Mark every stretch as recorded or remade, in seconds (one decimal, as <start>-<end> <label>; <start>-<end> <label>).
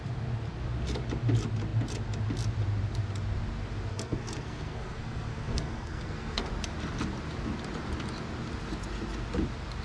0.0-3.9 recorded; 3.9-6.5 remade; 6.5-9.8 recorded